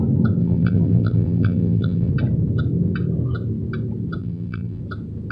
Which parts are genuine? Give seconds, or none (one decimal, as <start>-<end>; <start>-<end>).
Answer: 0.0-0.4; 2.1-4.2; 4.8-5.3